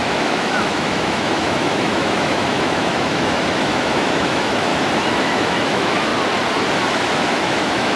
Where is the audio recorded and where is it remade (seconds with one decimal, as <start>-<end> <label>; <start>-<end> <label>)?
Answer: 0.0-4.7 remade; 4.7-5.2 recorded; 5.2-6.1 remade; 6.1-6.9 recorded; 6.9-8.0 remade